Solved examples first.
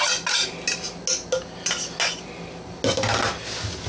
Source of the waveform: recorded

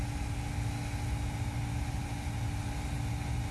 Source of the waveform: recorded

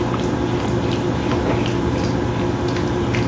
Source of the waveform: recorded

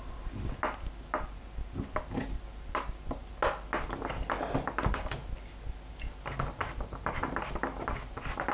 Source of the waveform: recorded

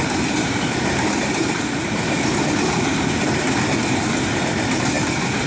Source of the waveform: recorded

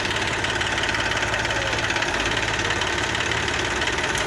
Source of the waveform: remade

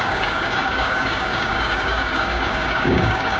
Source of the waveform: remade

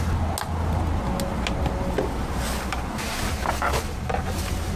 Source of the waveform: recorded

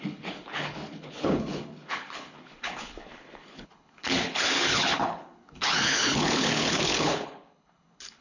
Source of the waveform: remade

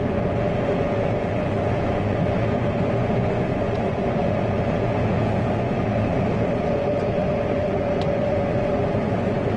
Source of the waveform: remade